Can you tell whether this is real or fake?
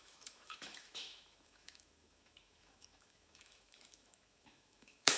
fake